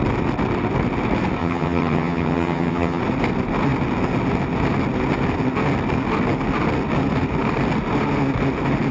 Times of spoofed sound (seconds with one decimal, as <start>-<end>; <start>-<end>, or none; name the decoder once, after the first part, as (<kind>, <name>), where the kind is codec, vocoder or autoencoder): 1.4-3.0 (vocoder, HiFi-GAN)